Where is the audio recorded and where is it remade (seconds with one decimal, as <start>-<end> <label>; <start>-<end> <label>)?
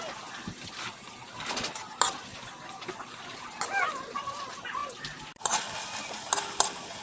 0.0-2.3 recorded; 2.3-3.2 remade; 3.2-7.0 recorded